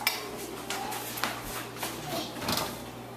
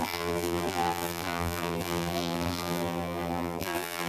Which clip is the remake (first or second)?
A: second